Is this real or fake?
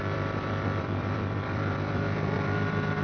fake